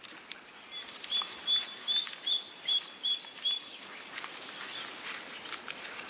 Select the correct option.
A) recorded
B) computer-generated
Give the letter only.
A